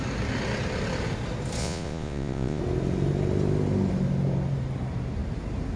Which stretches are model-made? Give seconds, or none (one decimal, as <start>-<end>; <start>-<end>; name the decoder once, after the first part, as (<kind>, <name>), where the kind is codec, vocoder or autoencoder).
1.6-2.6 (vocoder, Vocos)